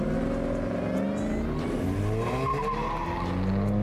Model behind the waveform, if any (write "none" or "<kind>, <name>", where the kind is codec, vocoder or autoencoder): none